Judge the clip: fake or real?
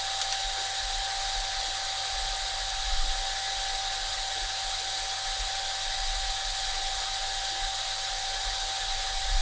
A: real